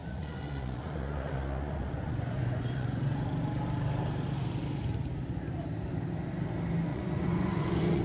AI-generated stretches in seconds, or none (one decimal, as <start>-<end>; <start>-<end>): 0.0-3.2; 6.9-8.0

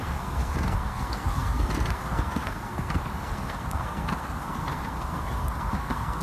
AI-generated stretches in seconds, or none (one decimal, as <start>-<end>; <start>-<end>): 0.0-6.2

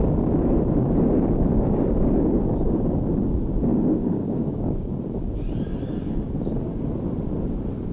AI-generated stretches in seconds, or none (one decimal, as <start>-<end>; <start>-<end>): 1.5-2.2; 3.7-5.0

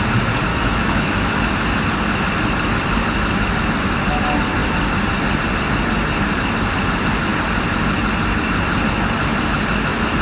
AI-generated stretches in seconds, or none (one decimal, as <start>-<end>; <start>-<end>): 0.5-1.4

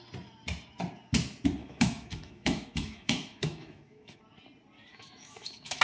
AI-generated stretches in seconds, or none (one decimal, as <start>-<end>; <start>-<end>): 1.6-4.2; 4.9-5.8

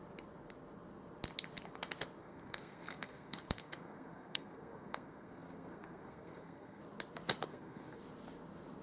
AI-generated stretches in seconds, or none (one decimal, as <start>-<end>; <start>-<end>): 2.2-6.8; 7.5-8.0

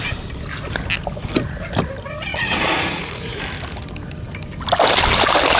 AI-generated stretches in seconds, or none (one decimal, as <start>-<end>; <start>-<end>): 2.3-3.4